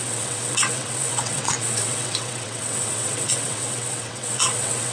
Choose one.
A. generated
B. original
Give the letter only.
A